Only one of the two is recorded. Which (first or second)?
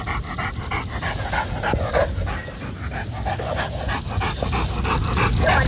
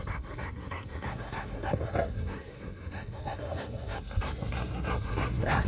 first